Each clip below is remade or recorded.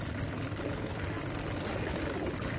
recorded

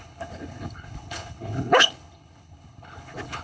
remade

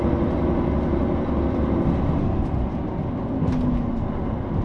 recorded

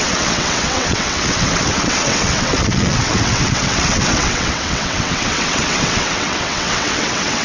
remade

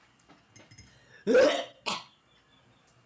recorded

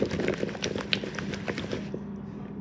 recorded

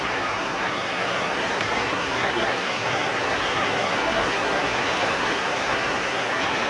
remade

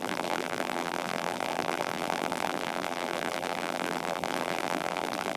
remade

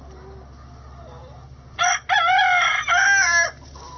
recorded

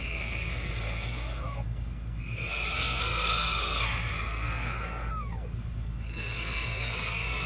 remade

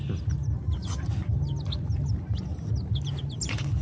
recorded